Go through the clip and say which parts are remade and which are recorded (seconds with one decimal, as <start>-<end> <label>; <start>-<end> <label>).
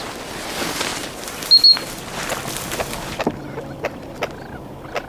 0.0-5.1 recorded